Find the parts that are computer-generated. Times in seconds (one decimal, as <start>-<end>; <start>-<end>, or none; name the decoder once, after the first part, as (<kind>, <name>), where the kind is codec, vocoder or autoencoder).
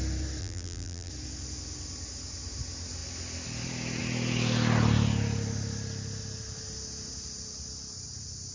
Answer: 0.4-1.1 (vocoder, BigVGAN v2)